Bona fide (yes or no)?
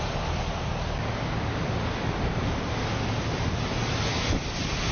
yes